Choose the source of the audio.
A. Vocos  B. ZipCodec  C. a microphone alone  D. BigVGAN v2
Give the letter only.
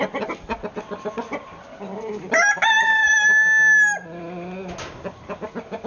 C